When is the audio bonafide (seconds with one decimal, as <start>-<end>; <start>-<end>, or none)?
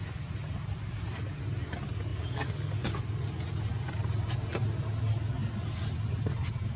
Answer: 0.0-6.8